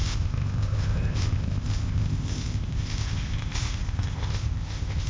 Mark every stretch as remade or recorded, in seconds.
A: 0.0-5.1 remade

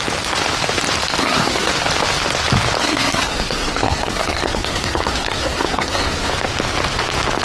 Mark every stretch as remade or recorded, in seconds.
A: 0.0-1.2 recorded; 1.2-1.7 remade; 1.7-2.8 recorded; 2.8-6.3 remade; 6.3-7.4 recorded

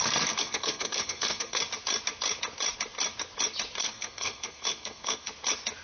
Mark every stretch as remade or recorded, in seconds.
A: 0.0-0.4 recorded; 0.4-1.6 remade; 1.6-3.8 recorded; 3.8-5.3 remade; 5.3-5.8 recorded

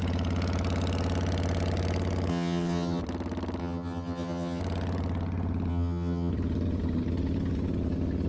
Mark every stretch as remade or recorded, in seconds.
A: 0.0-2.3 recorded; 2.3-3.0 remade; 3.0-3.6 recorded; 3.6-4.6 remade; 4.6-5.7 recorded; 5.7-6.3 remade; 6.3-8.3 recorded

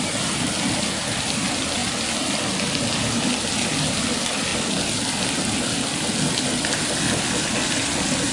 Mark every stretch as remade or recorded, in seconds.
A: 0.0-8.3 recorded